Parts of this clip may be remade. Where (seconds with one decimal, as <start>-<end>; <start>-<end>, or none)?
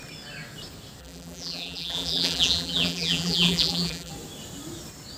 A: 1.0-4.1